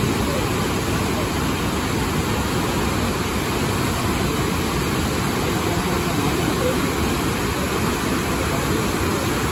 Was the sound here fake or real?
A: real